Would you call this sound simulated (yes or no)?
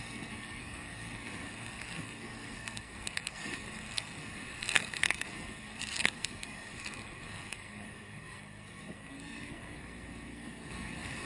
yes